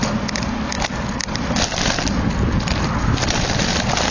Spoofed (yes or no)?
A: no